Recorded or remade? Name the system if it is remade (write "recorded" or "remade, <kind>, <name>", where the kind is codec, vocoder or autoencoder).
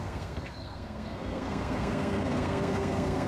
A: remade, codec, SNAC